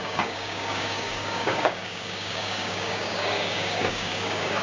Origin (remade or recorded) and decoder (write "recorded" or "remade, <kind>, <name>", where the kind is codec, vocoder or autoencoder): remade, codec, DAC